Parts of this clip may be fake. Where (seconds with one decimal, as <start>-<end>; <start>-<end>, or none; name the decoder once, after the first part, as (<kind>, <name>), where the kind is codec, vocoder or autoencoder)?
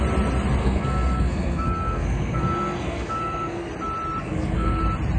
0.6-3.7 (codec, SNAC); 4.2-4.8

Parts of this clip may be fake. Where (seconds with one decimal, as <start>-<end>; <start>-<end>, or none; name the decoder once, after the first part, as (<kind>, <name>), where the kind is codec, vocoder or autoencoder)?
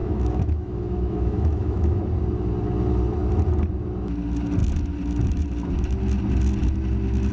0.0-2.0 (autoencoder, DAC-VAE)